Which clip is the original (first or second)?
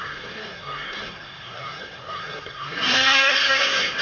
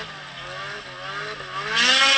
second